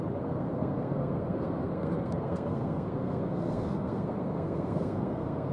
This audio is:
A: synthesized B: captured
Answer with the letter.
A